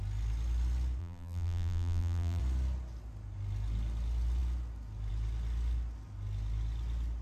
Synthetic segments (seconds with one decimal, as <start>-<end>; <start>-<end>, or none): 1.0-2.4